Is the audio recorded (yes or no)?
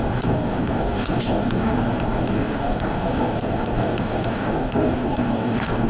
no